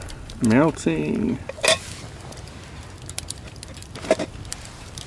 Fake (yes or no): no